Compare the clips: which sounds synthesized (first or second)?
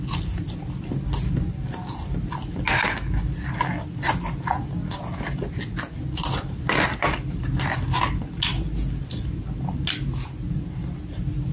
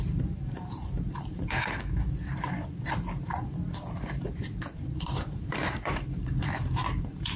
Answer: second